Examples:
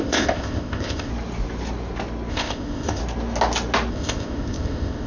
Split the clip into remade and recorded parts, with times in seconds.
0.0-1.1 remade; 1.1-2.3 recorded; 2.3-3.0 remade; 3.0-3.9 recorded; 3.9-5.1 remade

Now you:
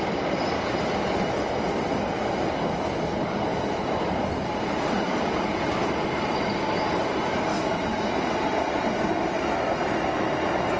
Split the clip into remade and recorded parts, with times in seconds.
0.0-7.5 recorded; 7.5-8.1 remade; 8.1-10.8 recorded

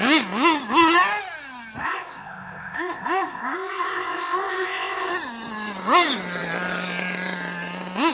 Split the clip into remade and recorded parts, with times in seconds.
0.0-1.8 recorded; 1.8-5.1 remade; 5.1-8.1 recorded

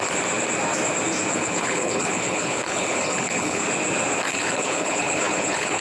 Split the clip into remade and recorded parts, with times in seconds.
0.0-1.3 recorded; 1.3-3.6 remade; 3.6-4.3 recorded; 4.3-5.8 remade

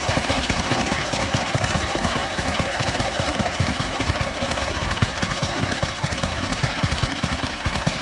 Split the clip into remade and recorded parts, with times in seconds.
0.0-8.0 remade

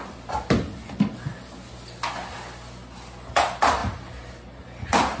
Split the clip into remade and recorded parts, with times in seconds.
0.0-5.2 recorded